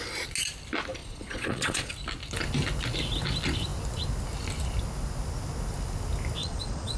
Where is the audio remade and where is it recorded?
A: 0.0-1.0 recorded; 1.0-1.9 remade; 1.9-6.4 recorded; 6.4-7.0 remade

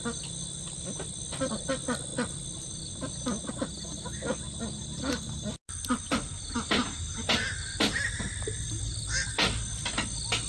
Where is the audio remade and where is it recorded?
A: 0.0-10.5 recorded